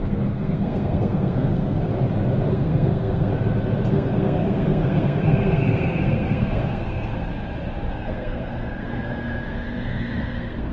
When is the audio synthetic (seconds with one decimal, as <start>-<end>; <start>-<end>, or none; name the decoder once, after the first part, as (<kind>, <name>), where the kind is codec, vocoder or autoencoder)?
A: 0.0-1.9 (codec, SNAC); 2.5-3.3; 3.9-7.3; 7.9-10.7